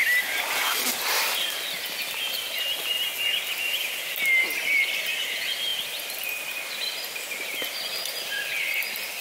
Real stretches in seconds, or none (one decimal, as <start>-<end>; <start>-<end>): 0.0-9.2